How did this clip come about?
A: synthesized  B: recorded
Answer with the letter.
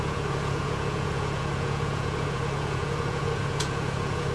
A